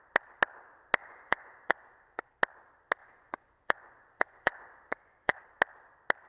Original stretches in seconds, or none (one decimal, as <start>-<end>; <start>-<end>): 0.0-1.0; 2.3-3.0; 5.4-6.3